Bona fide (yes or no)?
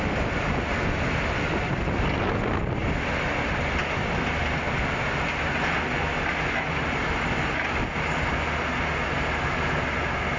yes